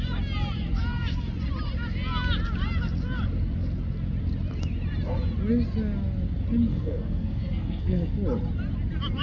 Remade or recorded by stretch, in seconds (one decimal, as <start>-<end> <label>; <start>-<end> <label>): 0.0-6.7 recorded; 6.7-8.1 remade; 8.1-9.2 recorded